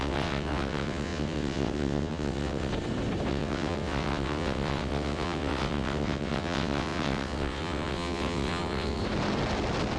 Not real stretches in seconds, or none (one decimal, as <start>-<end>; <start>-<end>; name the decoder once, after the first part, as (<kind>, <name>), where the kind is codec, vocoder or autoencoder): 0.0-2.7 (vocoder, WaveNeXt); 3.3-9.0